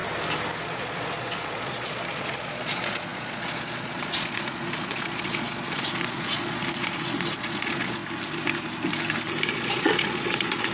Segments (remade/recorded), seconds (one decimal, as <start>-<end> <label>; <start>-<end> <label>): 0.0-0.6 recorded; 0.6-8.0 remade; 8.0-9.5 recorded; 9.5-10.7 remade